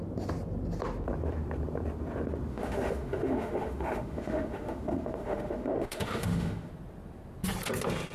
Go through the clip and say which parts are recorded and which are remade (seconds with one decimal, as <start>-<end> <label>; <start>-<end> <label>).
0.0-2.5 recorded; 2.5-6.7 remade; 6.7-8.1 recorded